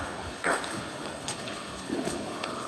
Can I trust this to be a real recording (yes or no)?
no